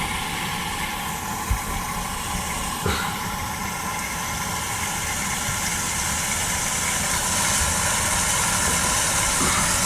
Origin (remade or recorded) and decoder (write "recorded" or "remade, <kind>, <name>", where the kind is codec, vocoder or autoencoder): recorded